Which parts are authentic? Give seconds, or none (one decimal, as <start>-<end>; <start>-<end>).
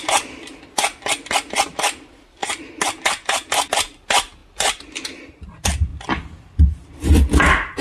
0.0-7.8